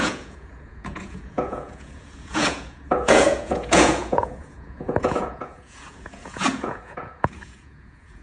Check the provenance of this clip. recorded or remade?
remade